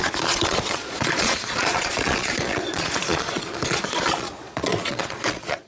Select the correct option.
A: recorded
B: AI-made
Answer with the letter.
B